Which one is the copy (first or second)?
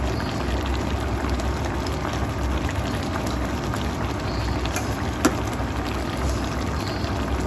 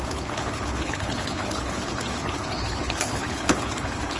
second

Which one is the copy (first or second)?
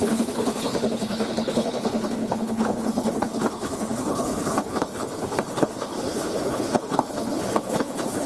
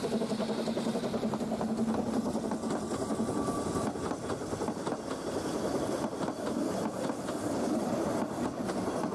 first